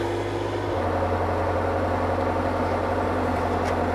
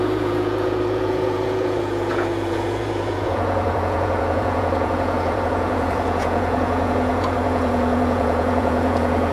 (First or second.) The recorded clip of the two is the first